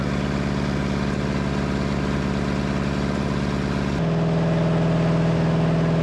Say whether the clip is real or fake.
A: real